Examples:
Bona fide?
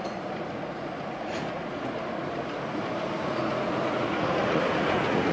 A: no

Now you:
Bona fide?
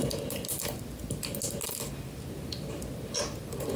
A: yes